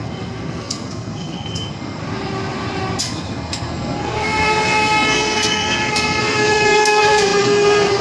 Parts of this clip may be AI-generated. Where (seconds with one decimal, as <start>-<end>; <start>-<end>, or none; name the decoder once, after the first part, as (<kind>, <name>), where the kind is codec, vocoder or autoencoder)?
0.0-2.0 (codec, SNAC); 3.0-8.0